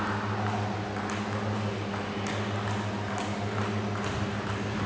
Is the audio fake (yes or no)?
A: no